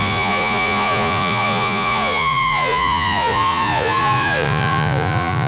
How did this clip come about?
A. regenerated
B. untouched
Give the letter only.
A